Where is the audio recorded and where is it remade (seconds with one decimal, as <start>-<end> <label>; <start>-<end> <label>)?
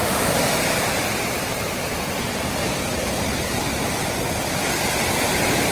0.0-3.4 remade; 3.4-4.0 recorded; 4.0-5.3 remade; 5.3-5.7 recorded